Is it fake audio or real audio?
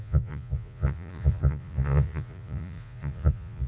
fake